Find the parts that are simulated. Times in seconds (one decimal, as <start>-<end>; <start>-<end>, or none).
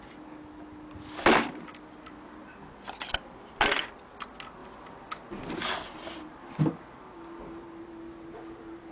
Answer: none